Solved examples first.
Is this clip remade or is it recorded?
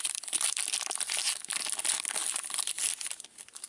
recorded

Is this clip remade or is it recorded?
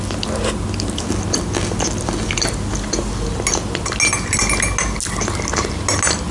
recorded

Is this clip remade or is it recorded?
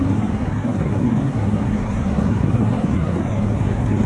remade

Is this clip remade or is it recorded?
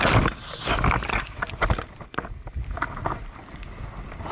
recorded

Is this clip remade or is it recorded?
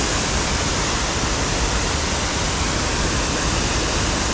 recorded